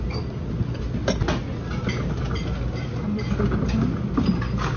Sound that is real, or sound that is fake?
real